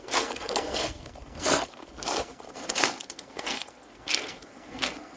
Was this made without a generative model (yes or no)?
no